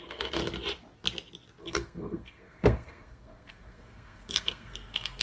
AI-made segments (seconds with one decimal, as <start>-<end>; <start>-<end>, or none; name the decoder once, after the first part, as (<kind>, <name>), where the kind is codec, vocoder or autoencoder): 0.0-0.4 (codec, SNAC); 1.6-5.2